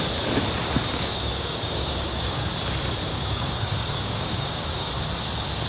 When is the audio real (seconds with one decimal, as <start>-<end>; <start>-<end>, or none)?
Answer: 0.0-0.9; 2.5-3.1; 4.9-5.7